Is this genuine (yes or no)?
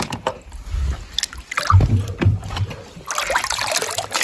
yes